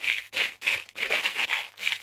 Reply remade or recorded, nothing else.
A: remade